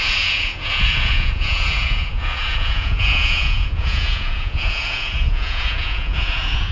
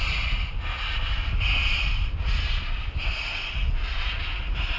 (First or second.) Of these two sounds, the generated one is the first